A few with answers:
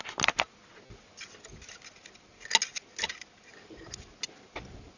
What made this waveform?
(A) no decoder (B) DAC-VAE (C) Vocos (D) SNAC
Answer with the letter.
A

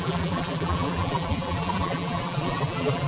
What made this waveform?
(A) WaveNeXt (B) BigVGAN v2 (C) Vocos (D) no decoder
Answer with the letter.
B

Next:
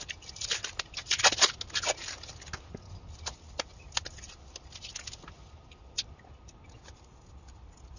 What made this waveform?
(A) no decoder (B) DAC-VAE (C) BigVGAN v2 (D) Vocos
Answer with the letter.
A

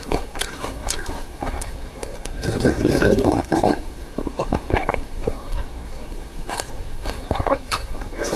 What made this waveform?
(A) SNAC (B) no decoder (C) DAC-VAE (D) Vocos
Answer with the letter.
A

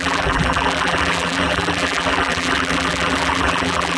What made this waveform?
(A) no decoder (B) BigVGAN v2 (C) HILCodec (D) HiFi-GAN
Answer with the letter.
B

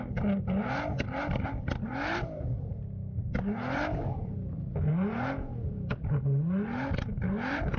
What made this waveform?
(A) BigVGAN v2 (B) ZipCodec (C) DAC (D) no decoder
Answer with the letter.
D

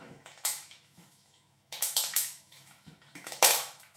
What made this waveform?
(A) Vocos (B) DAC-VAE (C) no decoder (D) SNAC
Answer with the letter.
B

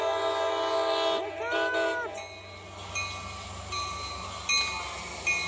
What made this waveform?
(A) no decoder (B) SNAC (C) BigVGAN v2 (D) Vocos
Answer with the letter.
A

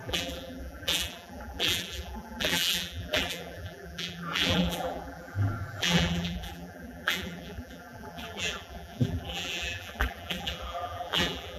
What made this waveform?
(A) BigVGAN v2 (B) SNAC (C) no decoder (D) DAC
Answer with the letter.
A